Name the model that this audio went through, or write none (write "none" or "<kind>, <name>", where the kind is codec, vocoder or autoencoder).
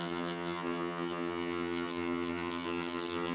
vocoder, HiFi-GAN